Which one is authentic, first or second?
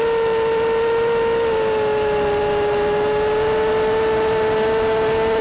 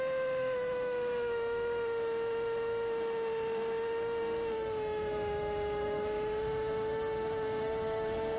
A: first